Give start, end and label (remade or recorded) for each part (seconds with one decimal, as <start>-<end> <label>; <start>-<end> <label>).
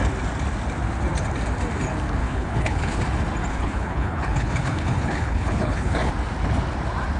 0.0-2.2 recorded; 2.2-3.0 remade; 3.0-3.5 recorded; 3.5-6.1 remade; 6.1-7.2 recorded